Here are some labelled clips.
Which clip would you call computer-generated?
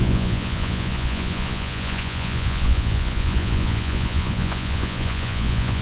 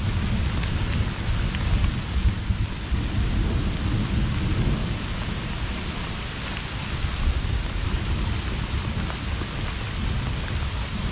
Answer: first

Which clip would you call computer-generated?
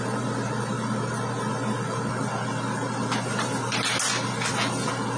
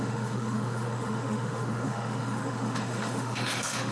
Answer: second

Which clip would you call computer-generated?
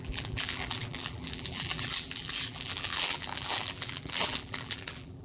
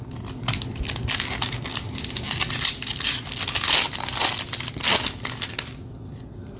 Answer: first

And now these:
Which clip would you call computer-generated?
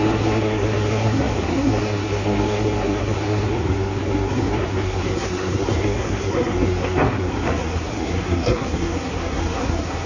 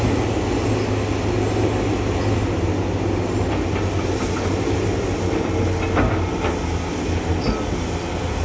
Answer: first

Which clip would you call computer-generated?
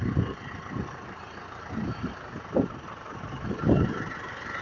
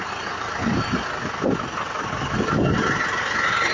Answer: first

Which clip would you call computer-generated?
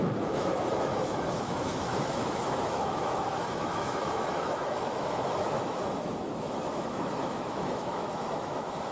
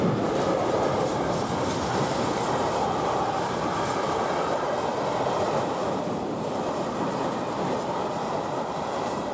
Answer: first